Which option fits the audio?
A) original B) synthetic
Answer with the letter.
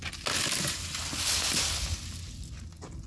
A